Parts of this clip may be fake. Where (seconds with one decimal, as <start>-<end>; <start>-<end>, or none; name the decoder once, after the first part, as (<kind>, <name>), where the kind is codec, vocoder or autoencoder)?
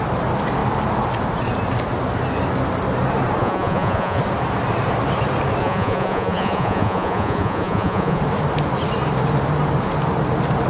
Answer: 3.4-4.2 (vocoder, Vocos); 5.6-8.2